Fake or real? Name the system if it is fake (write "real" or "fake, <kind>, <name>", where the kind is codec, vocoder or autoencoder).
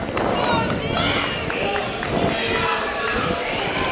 real